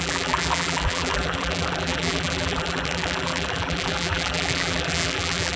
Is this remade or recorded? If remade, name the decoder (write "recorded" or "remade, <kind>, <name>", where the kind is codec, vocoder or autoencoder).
remade, vocoder, BigVGAN v2